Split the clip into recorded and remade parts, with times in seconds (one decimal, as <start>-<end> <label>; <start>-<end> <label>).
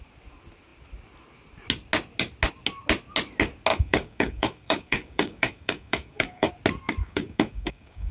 0.0-3.7 recorded; 3.7-6.5 remade; 6.5-7.0 recorded; 7.0-8.1 remade